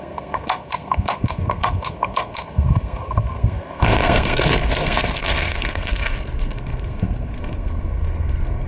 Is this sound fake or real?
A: fake